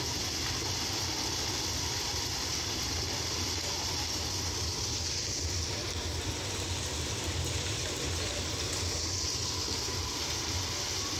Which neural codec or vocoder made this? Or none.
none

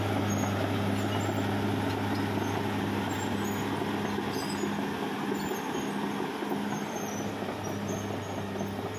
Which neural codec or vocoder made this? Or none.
none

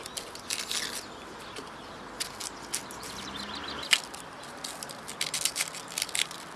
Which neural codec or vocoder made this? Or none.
none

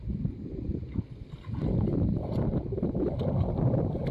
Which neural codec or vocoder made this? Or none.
none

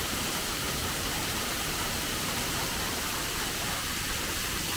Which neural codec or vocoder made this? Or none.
vocoder, BigVGAN v2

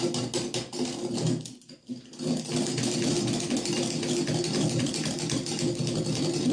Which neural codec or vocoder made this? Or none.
none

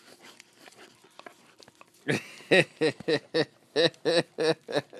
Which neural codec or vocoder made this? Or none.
none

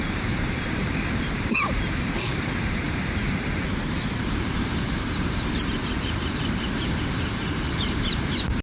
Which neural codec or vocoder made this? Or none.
vocoder, BigVGAN v2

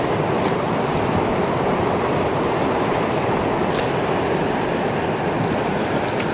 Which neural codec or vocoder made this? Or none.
none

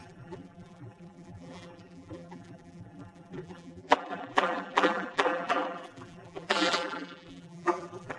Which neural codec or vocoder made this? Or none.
vocoder, BigVGAN v2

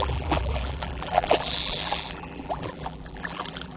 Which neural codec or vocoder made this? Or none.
vocoder, BigVGAN v2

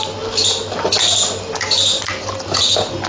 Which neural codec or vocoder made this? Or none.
none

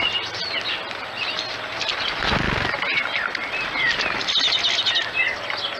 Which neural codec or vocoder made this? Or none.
none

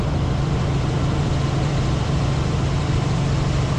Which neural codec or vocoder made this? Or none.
vocoder, BigVGAN v2